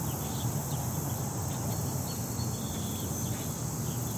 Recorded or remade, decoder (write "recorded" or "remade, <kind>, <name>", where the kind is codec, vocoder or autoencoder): recorded